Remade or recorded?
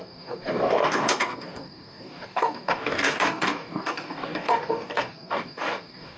remade